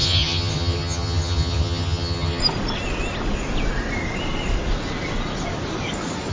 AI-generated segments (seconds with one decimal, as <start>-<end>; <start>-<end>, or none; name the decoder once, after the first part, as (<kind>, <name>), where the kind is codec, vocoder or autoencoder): 0.0-2.4 (vocoder, HiFi-GAN)